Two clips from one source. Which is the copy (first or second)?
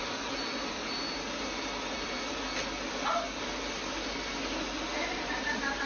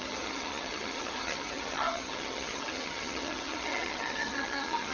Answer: second